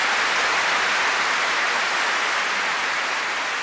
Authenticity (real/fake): real